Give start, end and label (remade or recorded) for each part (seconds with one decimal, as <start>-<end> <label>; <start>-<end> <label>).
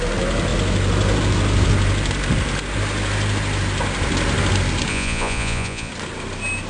0.0-4.9 recorded; 4.9-5.9 remade; 5.9-6.7 recorded